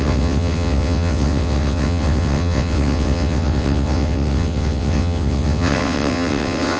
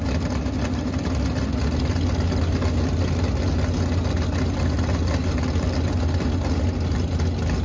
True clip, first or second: second